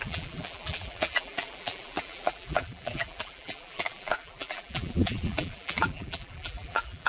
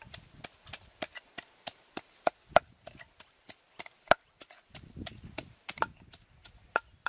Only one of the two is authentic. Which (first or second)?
second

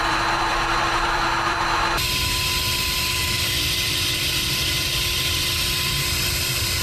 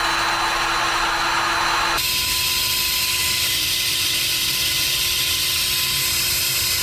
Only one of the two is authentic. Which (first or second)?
second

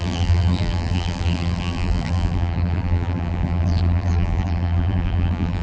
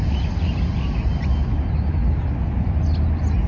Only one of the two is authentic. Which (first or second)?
second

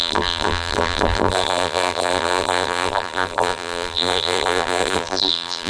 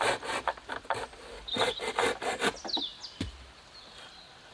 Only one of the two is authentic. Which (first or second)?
second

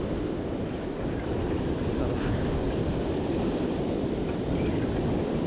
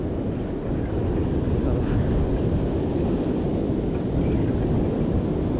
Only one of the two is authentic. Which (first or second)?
second